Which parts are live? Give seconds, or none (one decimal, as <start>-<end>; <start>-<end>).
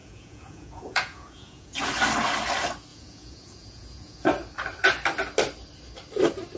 1.8-2.9; 4.3-6.6